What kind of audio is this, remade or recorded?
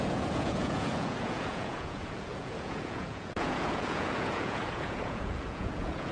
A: remade